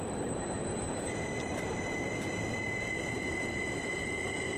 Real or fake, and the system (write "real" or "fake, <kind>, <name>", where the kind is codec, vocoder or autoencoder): fake, vocoder, BigVGAN v2